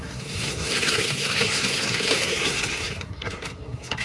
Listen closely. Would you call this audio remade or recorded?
remade